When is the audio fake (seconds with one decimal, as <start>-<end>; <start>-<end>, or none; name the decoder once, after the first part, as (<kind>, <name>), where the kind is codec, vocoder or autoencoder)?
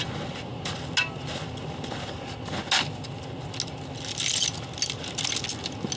none